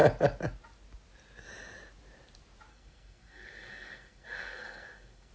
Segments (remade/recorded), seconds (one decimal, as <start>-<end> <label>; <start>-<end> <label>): 0.0-2.7 recorded; 2.7-5.3 remade